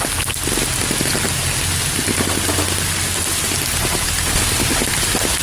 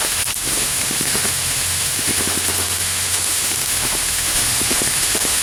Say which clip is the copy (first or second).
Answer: second